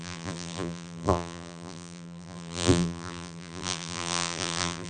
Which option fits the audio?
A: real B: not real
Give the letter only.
B